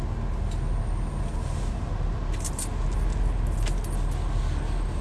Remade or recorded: recorded